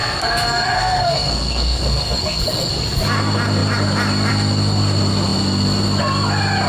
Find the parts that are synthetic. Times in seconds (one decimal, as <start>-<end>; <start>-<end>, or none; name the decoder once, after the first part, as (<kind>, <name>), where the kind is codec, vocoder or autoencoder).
0.0-2.7 (codec, SNAC)